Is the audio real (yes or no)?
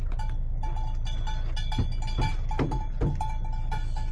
yes